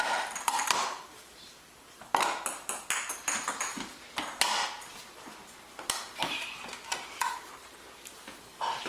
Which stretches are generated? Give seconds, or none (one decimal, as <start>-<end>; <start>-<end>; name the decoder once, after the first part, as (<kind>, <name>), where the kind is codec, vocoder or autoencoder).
0.0-2.0 (vocoder, BigVGAN v2); 4.9-5.4; 7.2-8.9